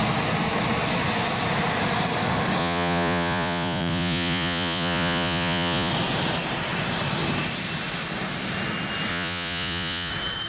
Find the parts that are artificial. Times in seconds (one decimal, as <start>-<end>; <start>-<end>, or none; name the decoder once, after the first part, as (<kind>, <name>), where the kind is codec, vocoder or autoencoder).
2.6-5.9 (vocoder, Vocos); 9.1-10.1